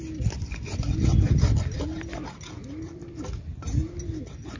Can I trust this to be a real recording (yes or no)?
yes